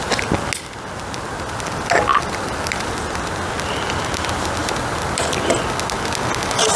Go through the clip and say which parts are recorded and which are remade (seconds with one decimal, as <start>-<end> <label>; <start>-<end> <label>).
0.0-4.6 recorded; 4.6-5.6 remade; 5.6-6.8 recorded